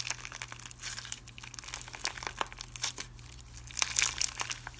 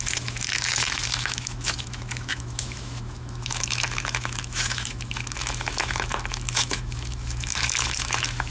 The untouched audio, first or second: first